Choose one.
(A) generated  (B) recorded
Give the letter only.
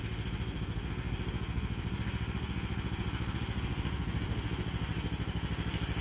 B